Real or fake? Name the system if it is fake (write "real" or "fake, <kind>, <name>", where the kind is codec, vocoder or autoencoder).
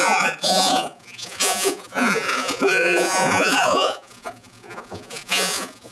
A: fake, vocoder, Vocos